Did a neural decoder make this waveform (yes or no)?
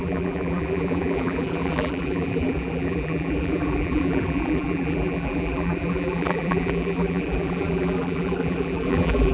yes